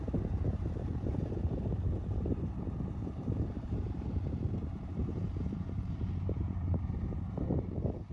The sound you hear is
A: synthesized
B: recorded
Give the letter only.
A